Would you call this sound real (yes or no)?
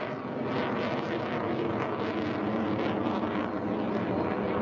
yes